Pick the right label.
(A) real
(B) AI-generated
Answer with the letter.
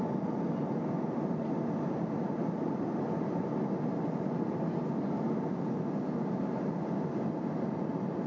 A